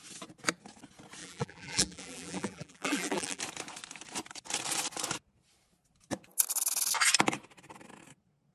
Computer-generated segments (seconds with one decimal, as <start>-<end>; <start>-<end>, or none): 1.2-3.4